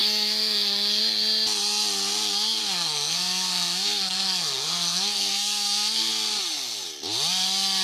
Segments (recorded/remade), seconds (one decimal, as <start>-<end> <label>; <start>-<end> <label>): 0.0-1.0 remade; 1.0-2.6 recorded; 2.6-6.1 remade; 6.1-7.8 recorded